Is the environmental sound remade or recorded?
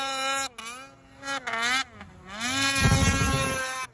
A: recorded